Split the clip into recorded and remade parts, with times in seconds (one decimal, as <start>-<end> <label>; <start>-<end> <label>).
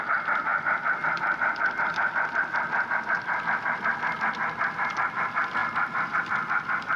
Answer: 0.0-7.0 recorded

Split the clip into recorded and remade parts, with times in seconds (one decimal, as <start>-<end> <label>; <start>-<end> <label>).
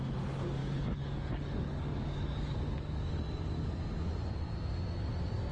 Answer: 0.0-0.6 recorded; 0.6-3.2 remade; 3.2-5.5 recorded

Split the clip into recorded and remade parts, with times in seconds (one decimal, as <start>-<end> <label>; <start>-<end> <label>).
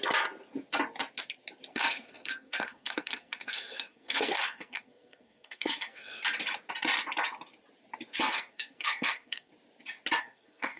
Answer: 0.0-1.7 recorded; 1.7-6.2 remade; 6.2-8.3 recorded; 8.3-9.5 remade; 9.5-10.2 recorded; 10.2-10.8 remade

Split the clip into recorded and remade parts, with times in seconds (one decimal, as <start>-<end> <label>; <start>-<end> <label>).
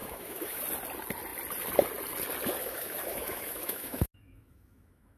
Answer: 0.0-0.6 remade; 0.6-2.6 recorded; 2.6-5.2 remade